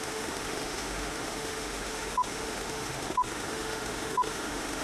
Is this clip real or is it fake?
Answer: fake